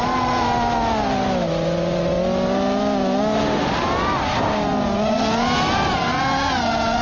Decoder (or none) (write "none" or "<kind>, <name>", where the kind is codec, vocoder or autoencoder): none